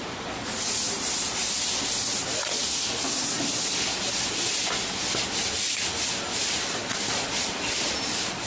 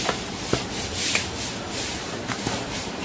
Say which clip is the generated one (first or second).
second